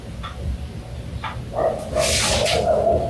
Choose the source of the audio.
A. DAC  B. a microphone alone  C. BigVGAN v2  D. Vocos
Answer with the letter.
B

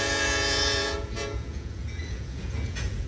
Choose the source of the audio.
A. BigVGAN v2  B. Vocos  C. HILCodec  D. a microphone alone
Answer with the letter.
B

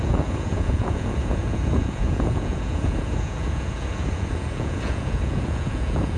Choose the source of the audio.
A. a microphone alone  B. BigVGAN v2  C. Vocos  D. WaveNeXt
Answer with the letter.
C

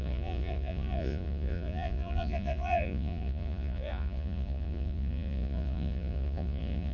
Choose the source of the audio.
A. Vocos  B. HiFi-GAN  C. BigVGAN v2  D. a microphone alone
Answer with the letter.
A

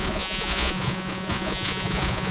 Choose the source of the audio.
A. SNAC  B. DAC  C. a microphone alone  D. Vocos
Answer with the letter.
D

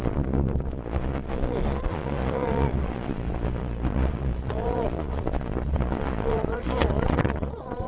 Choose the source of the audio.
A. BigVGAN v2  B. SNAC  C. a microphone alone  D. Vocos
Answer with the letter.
D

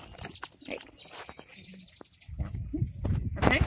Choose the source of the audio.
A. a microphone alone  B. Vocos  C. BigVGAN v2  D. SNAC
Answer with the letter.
A